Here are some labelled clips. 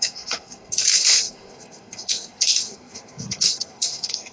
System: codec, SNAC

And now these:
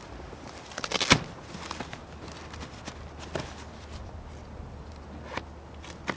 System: none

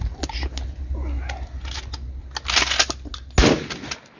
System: none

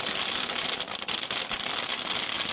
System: none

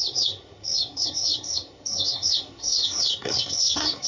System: codec, SNAC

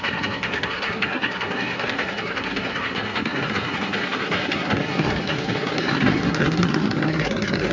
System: codec, SNAC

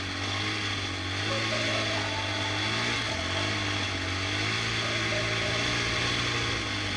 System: none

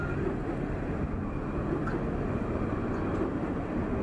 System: none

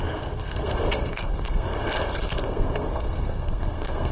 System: codec, SNAC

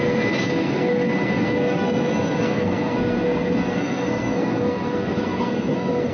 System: codec, SNAC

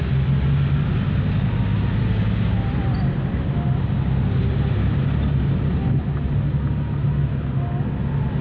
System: none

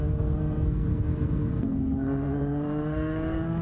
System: codec, SNAC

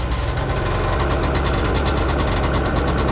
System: none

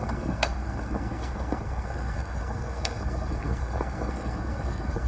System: codec, SNAC